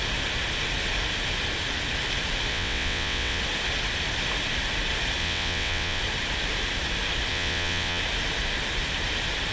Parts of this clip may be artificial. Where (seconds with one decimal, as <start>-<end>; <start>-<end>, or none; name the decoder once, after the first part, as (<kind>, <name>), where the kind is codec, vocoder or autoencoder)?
2.5-3.4 (vocoder, WaveNeXt); 5.2-6.0; 7.3-8.0